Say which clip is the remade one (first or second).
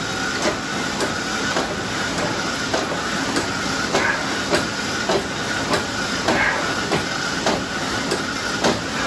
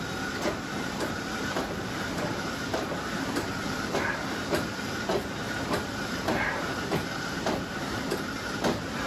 second